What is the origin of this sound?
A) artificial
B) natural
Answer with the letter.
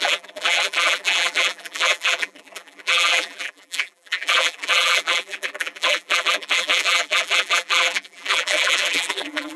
A